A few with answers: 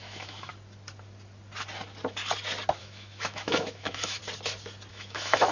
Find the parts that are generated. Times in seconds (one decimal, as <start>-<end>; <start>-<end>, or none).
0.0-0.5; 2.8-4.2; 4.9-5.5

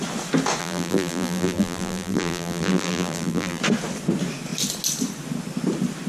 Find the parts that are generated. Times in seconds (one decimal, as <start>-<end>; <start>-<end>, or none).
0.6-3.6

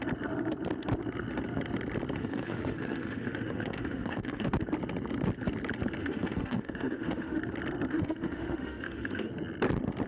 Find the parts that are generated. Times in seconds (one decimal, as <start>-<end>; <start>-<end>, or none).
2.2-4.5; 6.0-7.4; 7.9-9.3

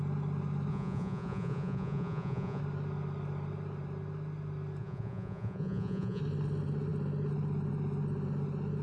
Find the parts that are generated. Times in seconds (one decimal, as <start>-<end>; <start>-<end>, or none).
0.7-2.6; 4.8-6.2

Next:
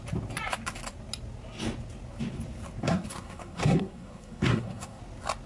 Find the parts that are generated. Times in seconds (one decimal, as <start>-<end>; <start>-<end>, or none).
2.8-5.0

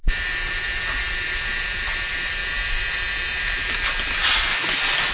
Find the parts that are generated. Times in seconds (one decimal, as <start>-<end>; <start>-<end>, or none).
0.0-4.5

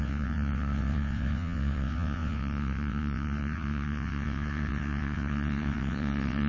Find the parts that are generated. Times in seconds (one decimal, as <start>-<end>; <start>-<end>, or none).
0.0-6.5

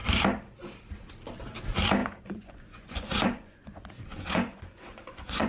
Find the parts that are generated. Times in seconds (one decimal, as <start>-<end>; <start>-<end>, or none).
2.0-5.5